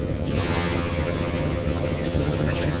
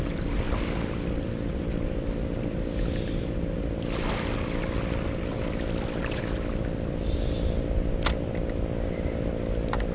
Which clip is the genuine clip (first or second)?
second